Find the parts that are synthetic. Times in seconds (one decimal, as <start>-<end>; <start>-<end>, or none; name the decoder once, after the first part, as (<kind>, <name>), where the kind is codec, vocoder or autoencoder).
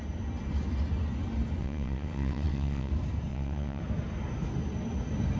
1.6-2.9 (vocoder, WaveNeXt); 3.3-3.8